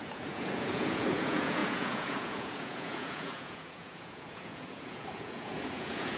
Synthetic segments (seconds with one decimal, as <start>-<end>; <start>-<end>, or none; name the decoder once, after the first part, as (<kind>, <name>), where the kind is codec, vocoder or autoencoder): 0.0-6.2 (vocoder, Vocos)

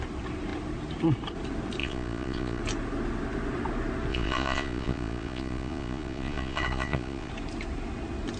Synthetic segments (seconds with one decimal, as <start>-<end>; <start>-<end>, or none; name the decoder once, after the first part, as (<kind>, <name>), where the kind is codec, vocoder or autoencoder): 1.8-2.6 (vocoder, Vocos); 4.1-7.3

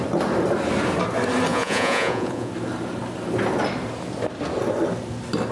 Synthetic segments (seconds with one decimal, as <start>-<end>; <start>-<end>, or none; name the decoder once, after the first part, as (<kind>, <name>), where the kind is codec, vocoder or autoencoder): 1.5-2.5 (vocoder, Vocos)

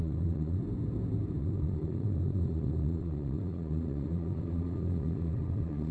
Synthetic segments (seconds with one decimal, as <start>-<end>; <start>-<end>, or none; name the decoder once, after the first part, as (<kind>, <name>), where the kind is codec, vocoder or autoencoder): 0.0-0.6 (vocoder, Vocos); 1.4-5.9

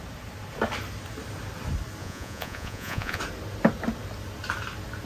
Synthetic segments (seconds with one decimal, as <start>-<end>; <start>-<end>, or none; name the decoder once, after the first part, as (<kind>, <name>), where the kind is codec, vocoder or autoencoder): 2.0-3.2 (vocoder, Vocos)